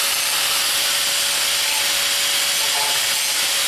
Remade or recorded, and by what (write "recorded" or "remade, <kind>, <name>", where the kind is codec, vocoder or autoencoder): recorded